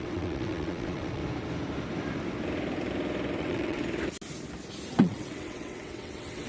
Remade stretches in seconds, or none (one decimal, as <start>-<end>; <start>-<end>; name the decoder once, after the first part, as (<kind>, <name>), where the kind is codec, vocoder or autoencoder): 0.0-1.2 (vocoder, WaveNeXt); 3.4-3.8; 4.9-6.5